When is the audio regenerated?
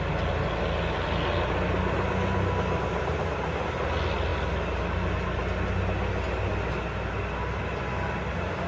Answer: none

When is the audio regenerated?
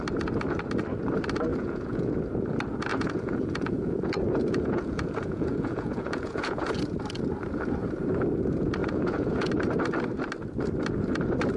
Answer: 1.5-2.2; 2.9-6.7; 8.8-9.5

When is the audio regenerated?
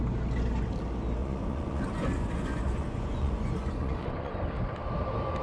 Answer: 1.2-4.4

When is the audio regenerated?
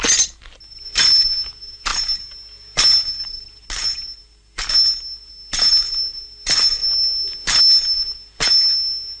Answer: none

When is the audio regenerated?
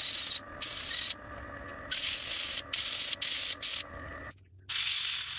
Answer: none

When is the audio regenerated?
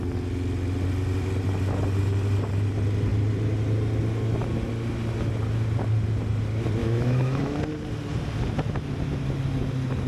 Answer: 6.8-7.6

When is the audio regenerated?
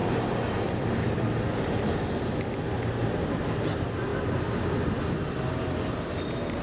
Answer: none